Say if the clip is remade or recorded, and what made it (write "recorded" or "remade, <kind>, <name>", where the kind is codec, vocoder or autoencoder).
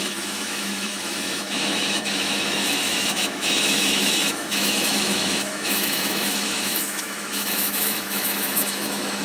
remade, autoencoder, DAC-VAE